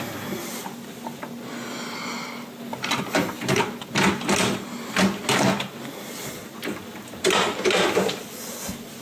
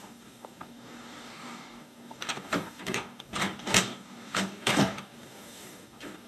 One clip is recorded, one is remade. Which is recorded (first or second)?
first